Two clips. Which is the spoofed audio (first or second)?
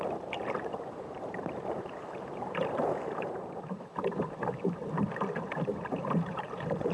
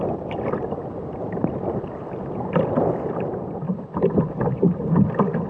first